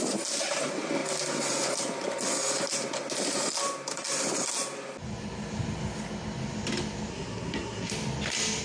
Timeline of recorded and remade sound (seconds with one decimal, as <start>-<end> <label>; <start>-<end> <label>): 0.0-7.1 recorded; 7.1-7.9 remade; 7.9-8.6 recorded